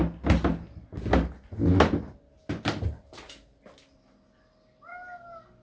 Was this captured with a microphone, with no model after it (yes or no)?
yes